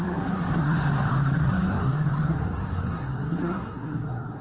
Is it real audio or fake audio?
fake